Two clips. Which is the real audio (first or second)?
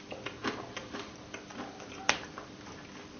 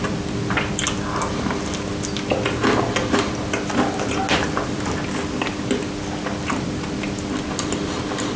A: second